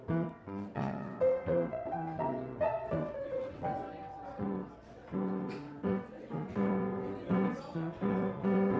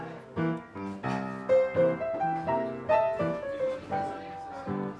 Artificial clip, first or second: first